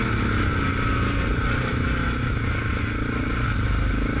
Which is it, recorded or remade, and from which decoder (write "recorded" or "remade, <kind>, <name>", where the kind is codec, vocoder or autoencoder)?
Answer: recorded